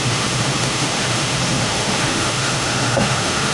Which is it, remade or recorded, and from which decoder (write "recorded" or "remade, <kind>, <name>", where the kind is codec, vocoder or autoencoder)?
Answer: remade, autoencoder, DAC-VAE